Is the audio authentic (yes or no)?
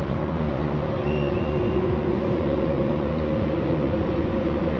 no